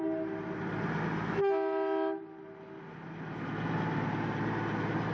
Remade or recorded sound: recorded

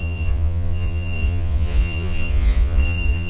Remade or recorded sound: remade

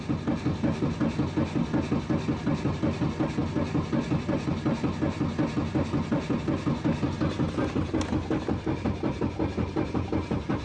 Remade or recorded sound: recorded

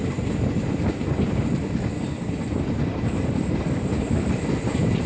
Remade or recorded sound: recorded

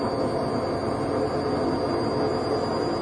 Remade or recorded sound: recorded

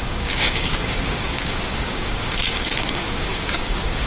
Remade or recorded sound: remade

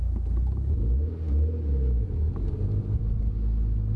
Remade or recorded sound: recorded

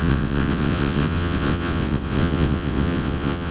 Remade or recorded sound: remade